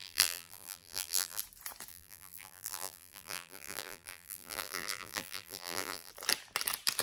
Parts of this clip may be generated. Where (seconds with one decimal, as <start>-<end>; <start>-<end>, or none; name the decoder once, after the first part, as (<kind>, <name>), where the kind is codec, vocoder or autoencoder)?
0.0-1.4 (vocoder, BigVGAN v2); 1.9-6.1